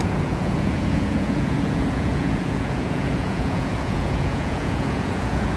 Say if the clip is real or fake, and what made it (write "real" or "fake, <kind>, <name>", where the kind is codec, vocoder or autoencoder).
fake, vocoder, Vocos